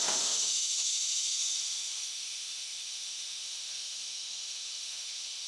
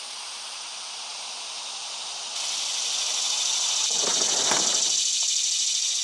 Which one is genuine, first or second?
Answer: second